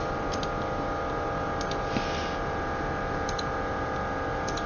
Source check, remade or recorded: recorded